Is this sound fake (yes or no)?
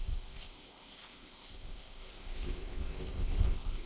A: yes